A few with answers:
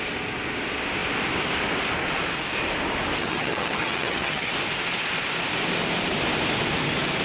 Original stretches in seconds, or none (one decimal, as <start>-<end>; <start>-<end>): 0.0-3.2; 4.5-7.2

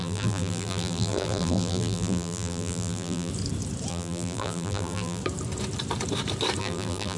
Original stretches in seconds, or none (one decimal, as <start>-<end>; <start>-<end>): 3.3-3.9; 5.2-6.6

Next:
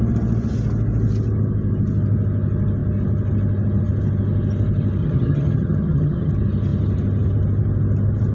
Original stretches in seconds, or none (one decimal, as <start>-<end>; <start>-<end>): 0.0-5.0; 6.3-8.3

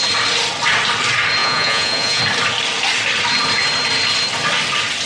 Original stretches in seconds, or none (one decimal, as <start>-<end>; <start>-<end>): 0.0-1.4; 2.2-5.1

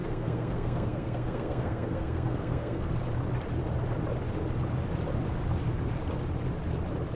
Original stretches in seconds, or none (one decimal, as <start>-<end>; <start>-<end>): 2.9-7.2